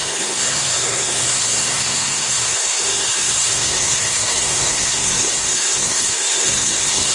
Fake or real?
fake